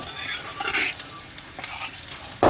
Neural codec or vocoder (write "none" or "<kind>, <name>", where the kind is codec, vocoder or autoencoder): none